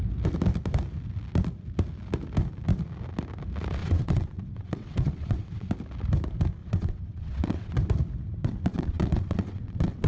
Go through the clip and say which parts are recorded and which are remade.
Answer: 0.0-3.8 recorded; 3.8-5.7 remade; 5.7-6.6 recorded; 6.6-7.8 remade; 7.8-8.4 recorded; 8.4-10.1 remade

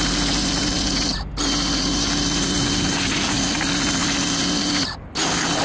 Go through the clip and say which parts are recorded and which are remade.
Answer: 0.0-5.6 recorded